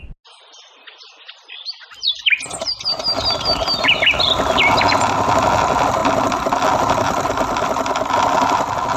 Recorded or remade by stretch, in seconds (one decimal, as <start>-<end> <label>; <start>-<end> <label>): 0.0-2.0 recorded; 2.0-4.3 remade; 4.3-9.0 recorded